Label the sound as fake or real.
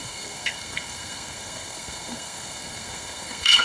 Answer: fake